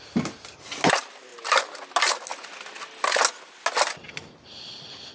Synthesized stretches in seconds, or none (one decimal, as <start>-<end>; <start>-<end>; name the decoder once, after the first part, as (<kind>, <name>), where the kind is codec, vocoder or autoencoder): none